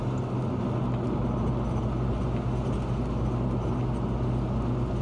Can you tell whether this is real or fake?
real